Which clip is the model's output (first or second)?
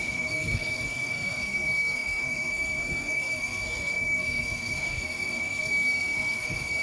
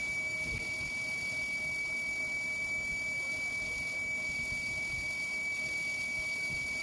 first